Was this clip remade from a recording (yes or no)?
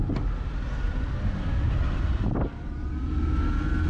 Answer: no